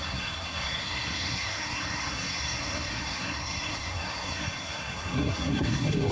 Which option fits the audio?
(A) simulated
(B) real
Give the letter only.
A